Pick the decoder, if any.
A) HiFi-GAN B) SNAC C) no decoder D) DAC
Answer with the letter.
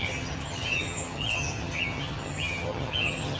A